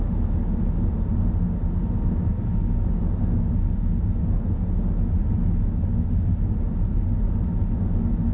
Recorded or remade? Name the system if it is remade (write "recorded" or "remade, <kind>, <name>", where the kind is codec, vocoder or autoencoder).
recorded